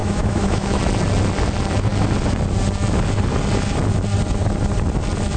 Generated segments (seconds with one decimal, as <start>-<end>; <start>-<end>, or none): 0.0-0.8